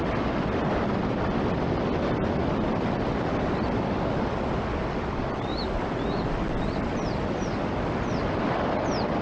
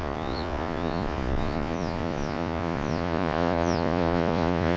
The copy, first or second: second